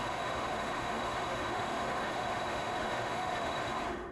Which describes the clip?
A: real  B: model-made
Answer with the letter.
B